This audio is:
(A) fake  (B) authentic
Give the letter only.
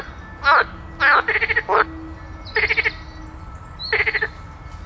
B